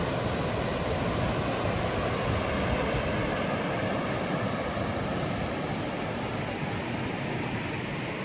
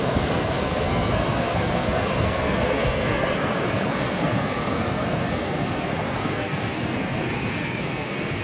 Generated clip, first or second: second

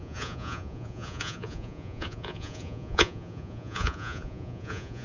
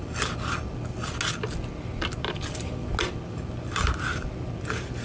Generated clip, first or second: first